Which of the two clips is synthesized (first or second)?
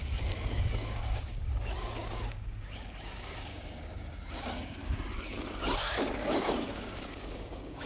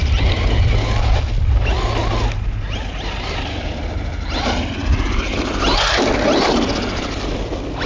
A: first